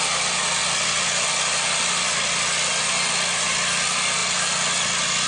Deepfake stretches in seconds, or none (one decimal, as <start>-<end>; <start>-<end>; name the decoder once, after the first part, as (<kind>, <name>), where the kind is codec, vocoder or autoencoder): none